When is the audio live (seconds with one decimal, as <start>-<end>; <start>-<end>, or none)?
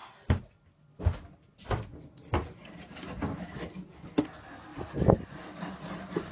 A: 0.0-4.7